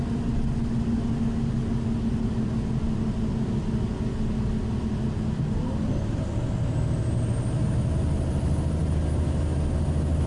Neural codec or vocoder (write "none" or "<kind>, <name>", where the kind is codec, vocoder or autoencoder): none